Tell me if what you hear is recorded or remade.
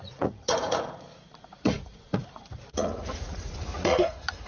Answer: remade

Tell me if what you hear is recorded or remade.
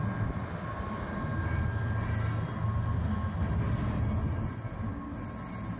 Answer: recorded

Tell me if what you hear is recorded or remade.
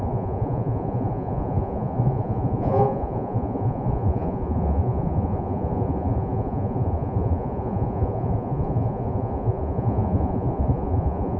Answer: remade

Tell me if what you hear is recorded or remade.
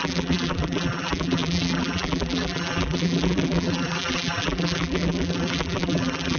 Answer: remade